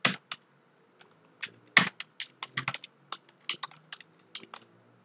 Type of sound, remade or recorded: recorded